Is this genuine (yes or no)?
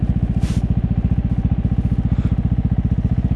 yes